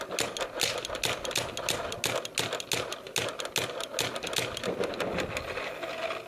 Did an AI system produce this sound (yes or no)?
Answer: no